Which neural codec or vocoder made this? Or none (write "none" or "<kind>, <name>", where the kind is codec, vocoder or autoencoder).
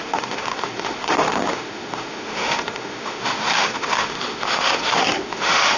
autoencoder, DAC-VAE